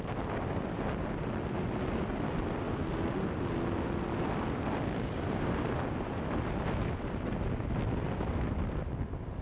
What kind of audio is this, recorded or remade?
recorded